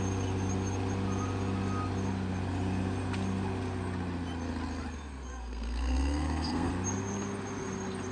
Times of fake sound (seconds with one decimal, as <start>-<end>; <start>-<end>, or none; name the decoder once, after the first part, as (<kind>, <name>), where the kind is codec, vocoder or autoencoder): 5.3-6.7 (codec, SNAC)